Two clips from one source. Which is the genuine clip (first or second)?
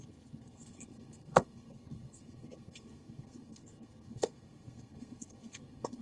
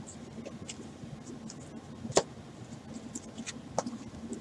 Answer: second